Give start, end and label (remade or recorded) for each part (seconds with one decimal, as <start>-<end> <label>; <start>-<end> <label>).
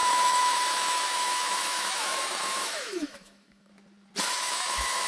0.0-3.7 remade; 3.7-4.2 recorded; 4.2-5.1 remade